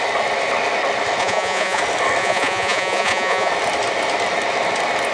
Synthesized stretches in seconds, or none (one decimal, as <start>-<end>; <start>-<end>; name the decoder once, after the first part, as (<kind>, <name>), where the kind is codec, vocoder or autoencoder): 1.2-1.8 (vocoder, Vocos); 2.2-3.5